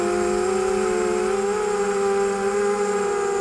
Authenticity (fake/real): real